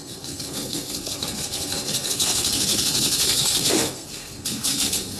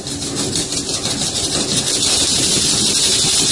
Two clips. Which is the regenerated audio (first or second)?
first